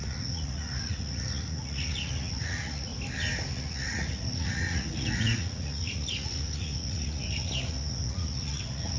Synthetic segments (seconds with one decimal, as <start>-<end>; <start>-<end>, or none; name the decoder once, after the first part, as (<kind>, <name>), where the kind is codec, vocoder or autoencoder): 0.0-2.9 (vocoder, Vocos); 3.5-9.0